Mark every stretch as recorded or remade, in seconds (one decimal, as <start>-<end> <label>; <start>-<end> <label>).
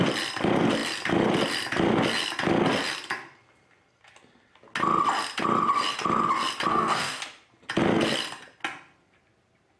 0.0-6.7 recorded; 6.7-7.2 remade; 7.2-9.8 recorded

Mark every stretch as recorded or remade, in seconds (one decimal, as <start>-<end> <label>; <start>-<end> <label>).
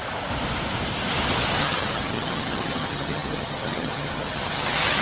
0.0-1.6 recorded; 1.6-5.0 remade